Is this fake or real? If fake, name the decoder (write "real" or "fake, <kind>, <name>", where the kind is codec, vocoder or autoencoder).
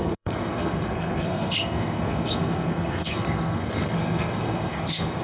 fake, codec, SNAC